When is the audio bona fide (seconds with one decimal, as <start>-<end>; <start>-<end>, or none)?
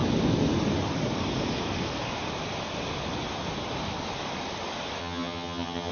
0.0-5.0